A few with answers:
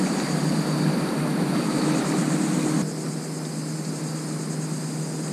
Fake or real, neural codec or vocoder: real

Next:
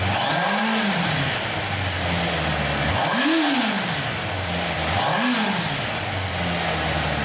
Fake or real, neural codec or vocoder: real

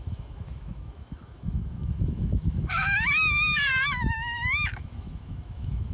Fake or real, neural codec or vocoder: fake, autoencoder, DAC-VAE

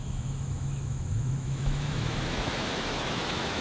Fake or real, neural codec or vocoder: fake, autoencoder, DAC-VAE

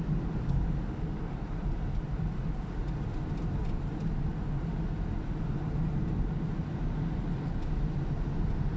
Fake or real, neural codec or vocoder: real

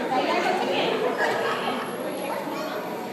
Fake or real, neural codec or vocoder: real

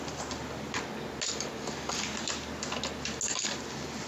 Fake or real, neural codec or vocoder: real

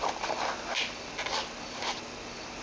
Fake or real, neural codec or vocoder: real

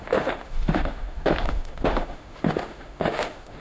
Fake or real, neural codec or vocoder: fake, autoencoder, DAC-VAE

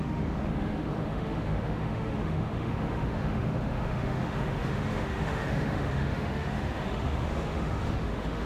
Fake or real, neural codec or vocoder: fake, autoencoder, DAC-VAE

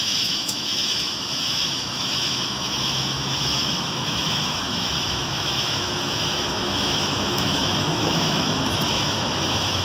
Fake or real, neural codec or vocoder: fake, autoencoder, DAC-VAE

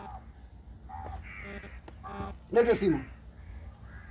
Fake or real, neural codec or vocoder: real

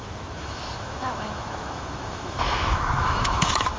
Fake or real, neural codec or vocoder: fake, autoencoder, DAC-VAE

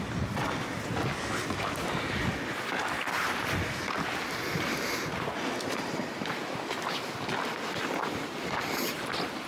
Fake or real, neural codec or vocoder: real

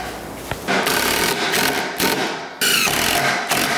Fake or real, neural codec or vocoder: real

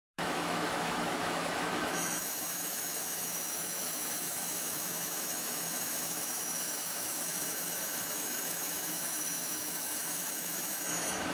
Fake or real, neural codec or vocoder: fake, autoencoder, DAC-VAE